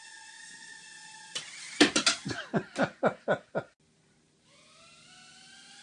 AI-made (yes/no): no